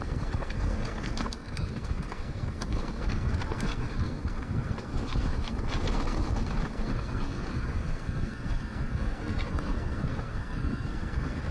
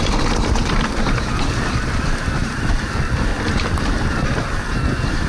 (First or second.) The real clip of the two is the second